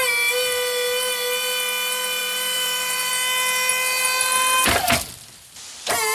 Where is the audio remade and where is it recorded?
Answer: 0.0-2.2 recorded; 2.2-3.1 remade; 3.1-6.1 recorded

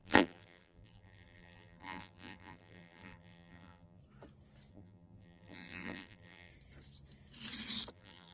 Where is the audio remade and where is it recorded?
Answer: 0.0-4.0 remade; 4.0-4.7 recorded; 4.7-6.5 remade; 6.5-7.9 recorded; 7.9-8.3 remade